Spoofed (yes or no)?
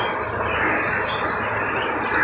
no